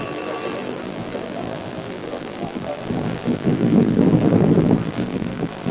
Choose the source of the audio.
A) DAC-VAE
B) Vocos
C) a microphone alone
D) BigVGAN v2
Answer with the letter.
D